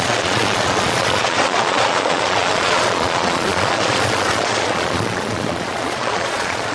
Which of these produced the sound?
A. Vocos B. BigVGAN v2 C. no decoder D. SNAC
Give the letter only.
A